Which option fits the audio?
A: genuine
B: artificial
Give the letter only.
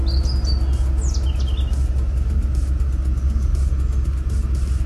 A